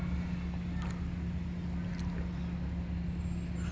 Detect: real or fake real